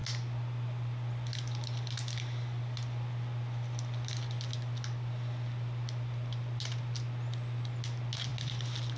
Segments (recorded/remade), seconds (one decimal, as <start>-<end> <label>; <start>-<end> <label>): 0.0-9.0 recorded